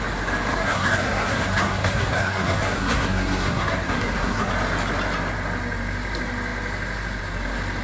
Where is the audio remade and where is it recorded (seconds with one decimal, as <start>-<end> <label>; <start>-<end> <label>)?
0.0-0.5 recorded; 0.5-4.5 remade; 4.5-7.8 recorded